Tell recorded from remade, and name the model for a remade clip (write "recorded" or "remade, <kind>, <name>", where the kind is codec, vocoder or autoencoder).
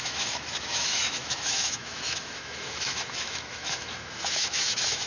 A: remade, autoencoder, DAC-VAE